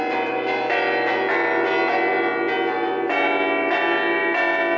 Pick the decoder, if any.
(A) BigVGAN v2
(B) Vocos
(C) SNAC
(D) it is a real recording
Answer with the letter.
D